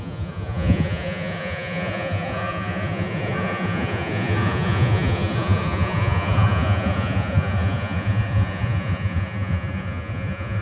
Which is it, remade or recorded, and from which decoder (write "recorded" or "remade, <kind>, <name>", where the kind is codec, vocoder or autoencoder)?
remade, vocoder, Vocos